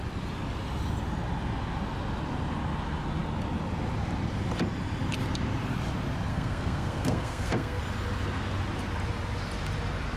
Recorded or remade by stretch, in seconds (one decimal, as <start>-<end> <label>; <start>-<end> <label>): 0.0-6.3 recorded; 6.3-7.8 remade; 7.8-10.2 recorded

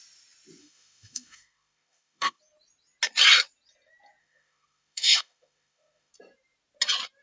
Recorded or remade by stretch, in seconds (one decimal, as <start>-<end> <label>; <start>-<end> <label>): 0.0-0.6 recorded; 0.6-2.4 remade; 2.4-4.2 recorded; 4.2-6.1 remade; 6.1-7.2 recorded

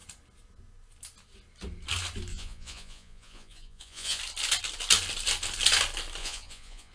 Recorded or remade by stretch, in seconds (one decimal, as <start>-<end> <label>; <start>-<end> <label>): 0.0-2.3 recorded; 2.3-4.2 remade; 4.2-6.2 recorded; 6.2-6.9 remade

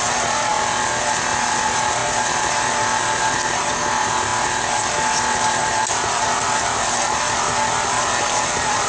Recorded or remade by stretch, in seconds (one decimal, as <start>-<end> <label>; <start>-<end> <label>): 0.0-8.9 recorded

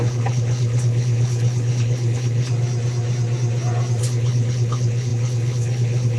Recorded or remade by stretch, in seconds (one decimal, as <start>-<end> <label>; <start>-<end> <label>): 0.0-2.5 remade; 2.5-4.0 recorded; 4.0-6.2 remade

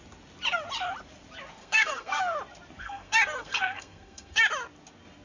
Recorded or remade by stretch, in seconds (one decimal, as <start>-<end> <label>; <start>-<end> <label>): 0.0-1.6 recorded; 1.6-2.2 remade; 2.2-2.8 recorded; 2.8-4.4 remade; 4.4-5.2 recorded

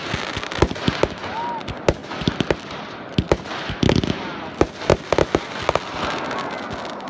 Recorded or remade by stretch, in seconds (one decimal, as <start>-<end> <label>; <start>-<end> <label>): 0.0-7.1 recorded